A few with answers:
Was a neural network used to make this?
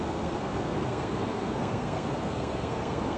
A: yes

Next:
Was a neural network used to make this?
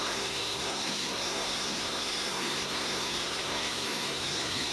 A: yes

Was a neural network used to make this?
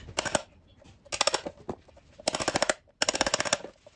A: no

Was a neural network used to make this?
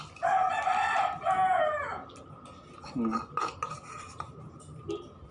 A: no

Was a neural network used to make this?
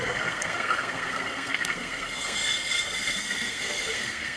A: yes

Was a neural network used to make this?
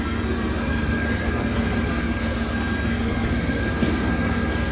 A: yes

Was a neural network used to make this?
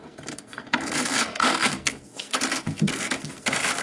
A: yes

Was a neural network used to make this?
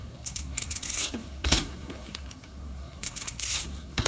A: yes